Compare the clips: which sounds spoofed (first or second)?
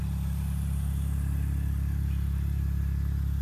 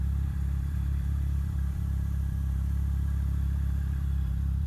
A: second